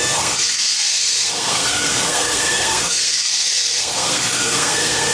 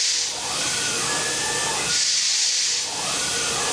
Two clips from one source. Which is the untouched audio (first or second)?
second